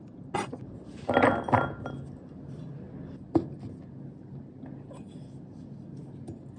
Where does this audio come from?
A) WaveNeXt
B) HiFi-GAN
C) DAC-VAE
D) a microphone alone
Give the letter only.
D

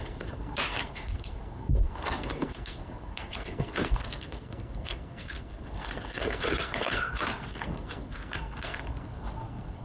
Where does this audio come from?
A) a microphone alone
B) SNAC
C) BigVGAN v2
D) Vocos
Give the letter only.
B